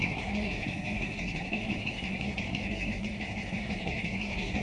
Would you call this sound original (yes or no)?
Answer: no